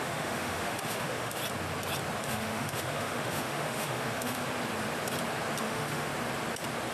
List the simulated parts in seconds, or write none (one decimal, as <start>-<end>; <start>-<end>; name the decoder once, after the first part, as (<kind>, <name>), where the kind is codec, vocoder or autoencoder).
0.0-1.4 (autoencoder, DAC-VAE); 2.2-4.4; 5.6-6.1